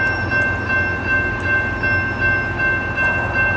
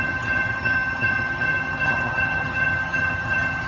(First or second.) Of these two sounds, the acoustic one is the first